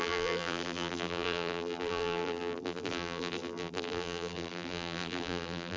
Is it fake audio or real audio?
fake